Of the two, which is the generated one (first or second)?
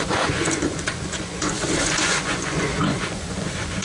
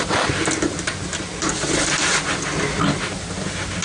first